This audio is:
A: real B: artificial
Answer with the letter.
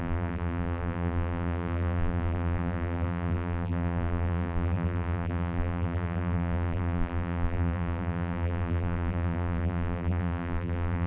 B